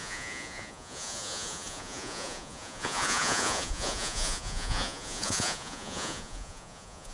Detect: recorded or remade remade